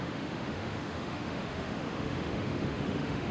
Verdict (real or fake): fake